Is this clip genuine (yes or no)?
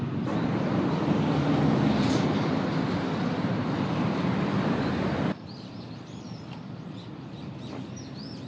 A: no